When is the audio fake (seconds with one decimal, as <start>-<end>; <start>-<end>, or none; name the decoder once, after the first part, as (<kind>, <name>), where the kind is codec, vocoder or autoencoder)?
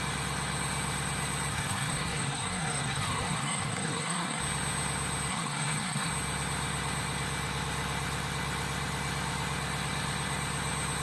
1.5-4.4 (codec, SNAC); 5.3-6.1